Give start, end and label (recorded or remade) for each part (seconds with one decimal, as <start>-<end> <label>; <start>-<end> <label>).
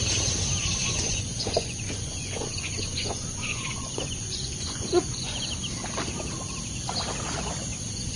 0.0-0.8 recorded; 0.8-5.5 remade; 5.5-7.7 recorded; 7.7-8.2 remade